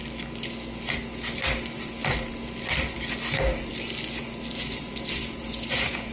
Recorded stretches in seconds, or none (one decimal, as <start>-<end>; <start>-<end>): 0.0-5.2